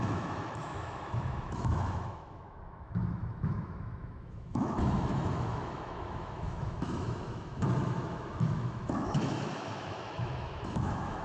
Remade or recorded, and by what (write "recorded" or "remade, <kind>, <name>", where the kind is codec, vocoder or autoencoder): remade, autoencoder, DAC-VAE